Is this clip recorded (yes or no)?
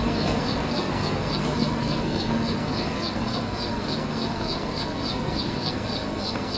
no